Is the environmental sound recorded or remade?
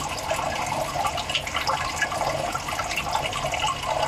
recorded